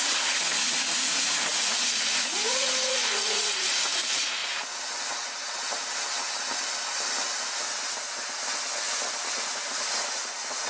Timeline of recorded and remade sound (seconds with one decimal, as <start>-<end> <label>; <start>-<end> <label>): 0.0-4.4 remade; 4.4-9.4 recorded; 9.4-10.7 remade

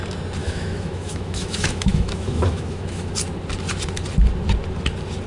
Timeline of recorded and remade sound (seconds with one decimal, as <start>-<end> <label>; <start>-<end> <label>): 0.0-0.4 recorded; 0.4-3.1 remade; 3.1-5.3 recorded

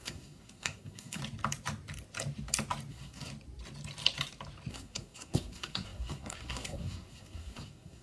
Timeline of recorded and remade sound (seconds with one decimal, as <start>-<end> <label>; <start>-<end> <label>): 0.0-1.2 remade; 1.2-2.9 recorded; 2.9-3.3 remade; 3.3-4.7 recorded; 4.7-8.0 remade

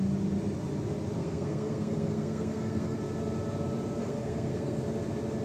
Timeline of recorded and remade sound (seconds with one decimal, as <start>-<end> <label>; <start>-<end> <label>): 0.0-1.2 recorded; 1.2-3.0 remade; 3.0-4.0 recorded; 4.0-4.8 remade; 4.8-5.4 recorded

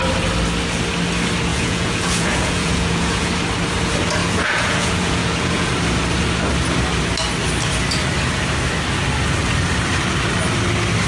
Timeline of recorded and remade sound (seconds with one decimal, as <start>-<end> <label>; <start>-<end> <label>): 0.0-1.5 recorded; 1.5-3.3 remade; 3.3-4.2 recorded; 4.2-5.7 remade; 5.7-11.1 recorded

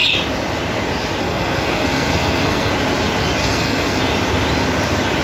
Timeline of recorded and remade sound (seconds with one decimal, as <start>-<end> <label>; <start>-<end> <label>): 0.0-1.2 recorded; 1.2-2.7 remade; 2.7-3.4 recorded; 3.4-4.0 remade; 4.0-5.2 recorded

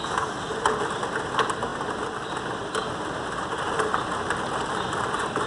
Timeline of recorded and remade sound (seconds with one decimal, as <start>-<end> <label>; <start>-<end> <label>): 0.0-5.5 recorded

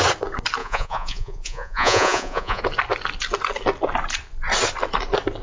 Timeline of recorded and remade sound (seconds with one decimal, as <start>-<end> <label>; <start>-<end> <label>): 0.0-0.6 recorded; 0.6-2.6 remade; 2.6-5.4 recorded